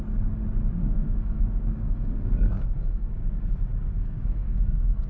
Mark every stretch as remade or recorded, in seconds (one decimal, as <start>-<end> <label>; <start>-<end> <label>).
0.0-0.8 recorded; 0.8-3.1 remade; 3.1-3.9 recorded; 3.9-5.1 remade